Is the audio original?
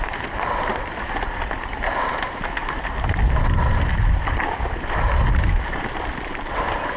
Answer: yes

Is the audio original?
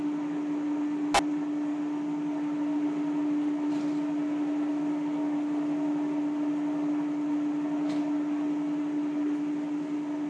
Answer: yes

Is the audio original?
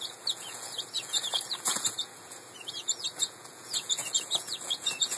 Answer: no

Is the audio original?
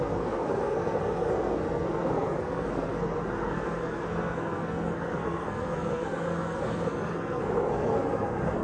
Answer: no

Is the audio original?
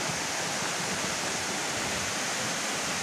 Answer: yes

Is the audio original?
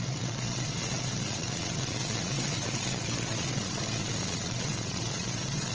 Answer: no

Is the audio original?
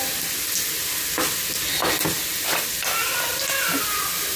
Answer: yes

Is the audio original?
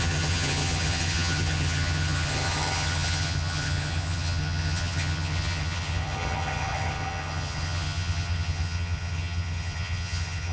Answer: no